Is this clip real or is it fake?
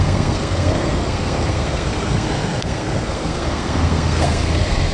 fake